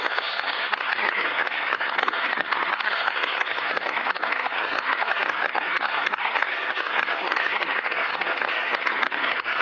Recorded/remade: remade